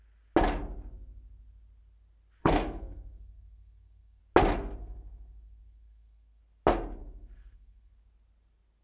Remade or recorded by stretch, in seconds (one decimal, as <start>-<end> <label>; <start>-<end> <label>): 0.0-2.4 recorded; 2.4-4.2 remade; 4.2-4.8 recorded; 4.8-6.4 remade; 6.4-7.0 recorded; 7.0-7.9 remade; 7.9-8.8 recorded